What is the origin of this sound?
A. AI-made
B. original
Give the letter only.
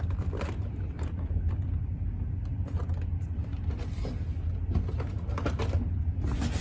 B